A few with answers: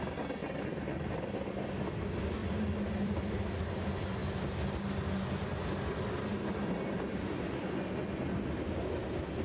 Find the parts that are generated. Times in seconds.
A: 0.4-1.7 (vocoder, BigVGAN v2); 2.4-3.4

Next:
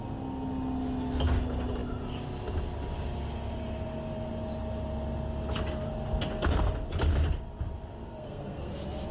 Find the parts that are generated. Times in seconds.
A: 8.0-8.7 (codec, SNAC)

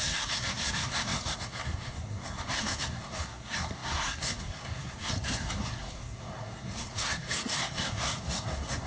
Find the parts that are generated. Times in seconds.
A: 0.0-8.9 (codec, SNAC)

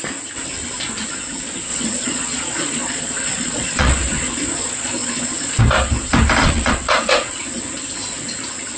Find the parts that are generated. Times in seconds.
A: 1.7-5.6 (vocoder, Vocos); 6.4-7.4

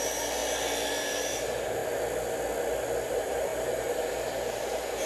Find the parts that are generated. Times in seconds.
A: 0.0-0.4 (vocoder, BigVGAN v2); 1.0-1.8; 3.1-5.1

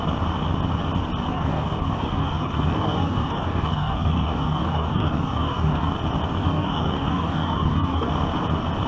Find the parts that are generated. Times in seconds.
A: 1.3-5.9 (codec, DAC); 6.4-8.1